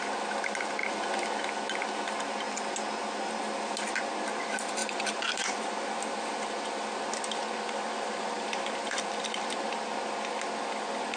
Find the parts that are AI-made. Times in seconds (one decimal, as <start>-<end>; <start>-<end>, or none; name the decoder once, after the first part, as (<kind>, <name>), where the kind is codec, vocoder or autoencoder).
4.8-9.7 (vocoder, BigVGAN v2)